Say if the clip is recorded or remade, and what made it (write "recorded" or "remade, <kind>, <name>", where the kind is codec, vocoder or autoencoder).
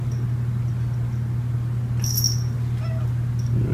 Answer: recorded